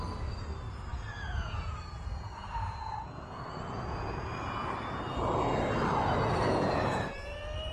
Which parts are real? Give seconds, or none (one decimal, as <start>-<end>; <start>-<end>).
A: 0.0-0.9; 5.0-6.4; 7.1-7.7